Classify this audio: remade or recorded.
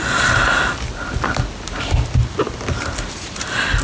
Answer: recorded